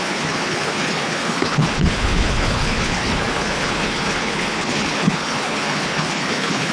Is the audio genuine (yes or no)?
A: no